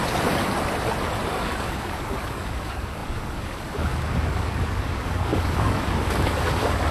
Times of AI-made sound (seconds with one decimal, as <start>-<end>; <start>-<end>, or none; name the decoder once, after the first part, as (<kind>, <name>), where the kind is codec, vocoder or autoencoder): 1.3-6.9 (codec, DAC)